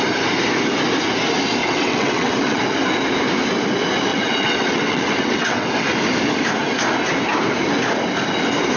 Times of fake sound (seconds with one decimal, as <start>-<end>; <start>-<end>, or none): 1.6-2.6; 4.1-5.7